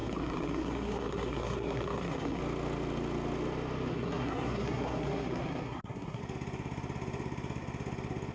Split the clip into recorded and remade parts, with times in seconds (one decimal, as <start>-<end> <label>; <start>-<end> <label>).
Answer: 0.0-2.4 remade; 2.4-3.9 recorded; 3.9-6.2 remade; 6.2-8.3 recorded

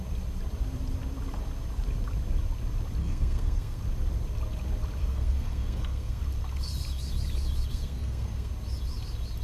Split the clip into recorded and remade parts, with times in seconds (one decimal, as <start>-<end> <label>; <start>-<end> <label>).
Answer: 0.0-3.0 recorded; 3.0-3.8 remade; 3.8-5.0 recorded; 5.0-6.2 remade; 6.2-7.7 recorded; 7.7-8.5 remade; 8.5-9.4 recorded

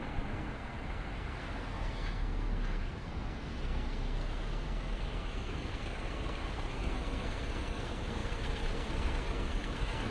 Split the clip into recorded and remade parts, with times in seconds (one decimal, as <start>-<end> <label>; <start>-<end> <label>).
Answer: 0.0-10.1 remade

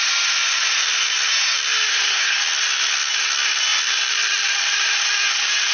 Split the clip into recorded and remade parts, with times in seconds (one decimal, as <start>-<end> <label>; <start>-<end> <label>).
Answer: 0.0-1.9 recorded; 1.9-2.4 remade; 2.4-5.7 recorded

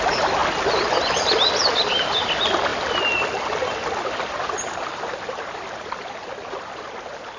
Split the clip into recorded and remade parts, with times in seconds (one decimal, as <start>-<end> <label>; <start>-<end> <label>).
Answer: 0.0-7.4 recorded